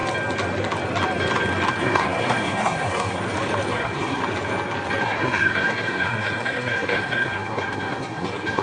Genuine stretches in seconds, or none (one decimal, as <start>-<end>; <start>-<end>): 0.0-1.8; 3.2-3.7; 4.2-5.0